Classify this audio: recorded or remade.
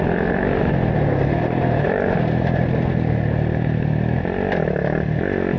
recorded